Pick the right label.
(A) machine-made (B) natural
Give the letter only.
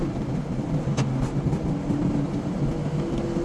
B